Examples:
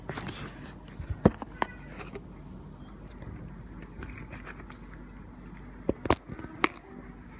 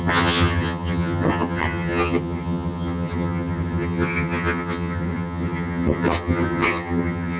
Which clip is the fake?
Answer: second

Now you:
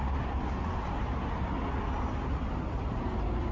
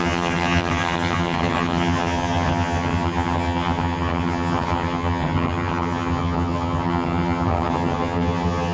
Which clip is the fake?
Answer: second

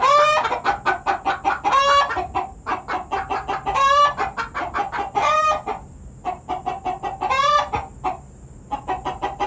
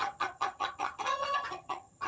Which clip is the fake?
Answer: second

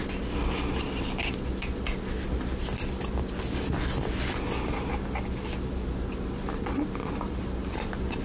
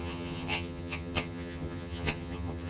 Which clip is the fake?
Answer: second